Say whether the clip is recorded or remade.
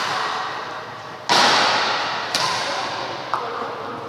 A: recorded